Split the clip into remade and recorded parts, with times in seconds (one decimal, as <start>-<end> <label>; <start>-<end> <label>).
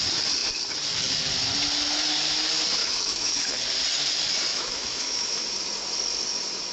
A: 0.0-2.8 recorded; 2.8-3.5 remade; 3.5-4.5 recorded; 4.5-5.3 remade; 5.3-6.7 recorded